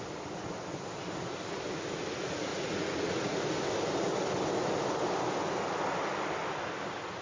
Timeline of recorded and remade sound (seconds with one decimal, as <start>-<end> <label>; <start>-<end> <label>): 0.0-2.5 recorded; 2.5-3.4 remade; 3.4-7.2 recorded